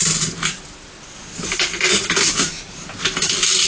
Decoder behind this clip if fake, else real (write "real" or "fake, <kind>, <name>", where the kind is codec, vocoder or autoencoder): real